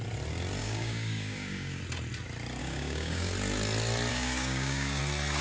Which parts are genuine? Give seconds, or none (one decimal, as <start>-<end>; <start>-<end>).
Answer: 0.0-0.6; 1.8-2.6; 3.3-4.1; 5.0-5.4